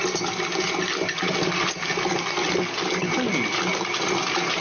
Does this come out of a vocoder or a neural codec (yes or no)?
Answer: no